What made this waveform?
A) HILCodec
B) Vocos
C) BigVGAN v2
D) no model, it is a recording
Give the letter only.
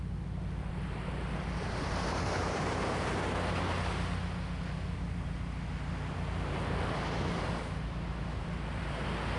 D